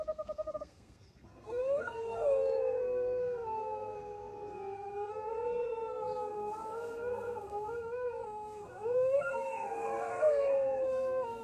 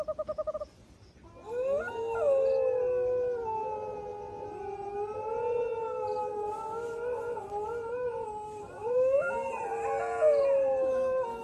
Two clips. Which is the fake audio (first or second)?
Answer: first